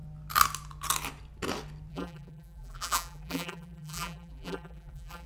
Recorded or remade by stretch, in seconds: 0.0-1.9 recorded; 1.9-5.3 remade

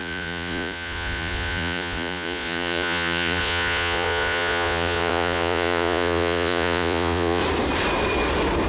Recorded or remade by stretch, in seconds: 0.0-7.4 remade; 7.4-8.7 recorded